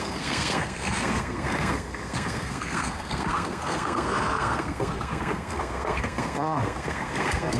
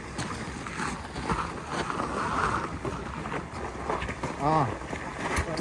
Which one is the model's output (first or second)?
first